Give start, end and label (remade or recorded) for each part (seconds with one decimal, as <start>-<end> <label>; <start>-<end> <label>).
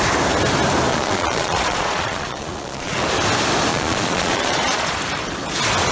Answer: 0.0-0.9 recorded; 0.9-3.0 remade; 3.0-3.7 recorded; 3.7-5.0 remade; 5.0-5.9 recorded